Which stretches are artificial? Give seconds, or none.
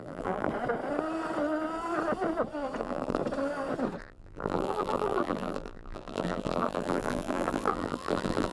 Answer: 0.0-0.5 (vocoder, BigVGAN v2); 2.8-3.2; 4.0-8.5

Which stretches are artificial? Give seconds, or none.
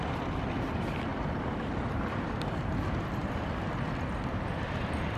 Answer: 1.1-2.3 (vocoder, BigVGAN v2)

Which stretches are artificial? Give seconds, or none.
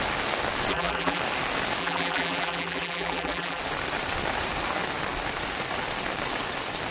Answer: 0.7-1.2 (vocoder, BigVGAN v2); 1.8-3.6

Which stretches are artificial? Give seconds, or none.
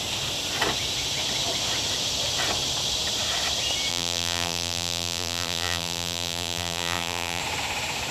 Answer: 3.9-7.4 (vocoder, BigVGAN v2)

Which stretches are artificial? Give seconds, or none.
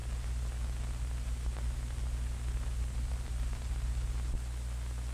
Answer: none